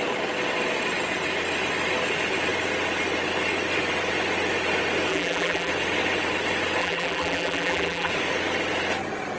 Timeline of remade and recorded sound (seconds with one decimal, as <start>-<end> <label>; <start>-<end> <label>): 0.0-5.1 recorded; 5.1-5.7 remade; 5.7-6.8 recorded; 6.8-8.1 remade; 8.1-9.4 recorded